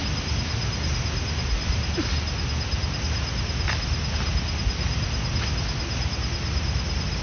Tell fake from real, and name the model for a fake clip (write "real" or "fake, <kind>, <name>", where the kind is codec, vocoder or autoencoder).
real